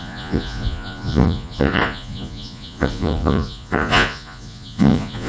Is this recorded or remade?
remade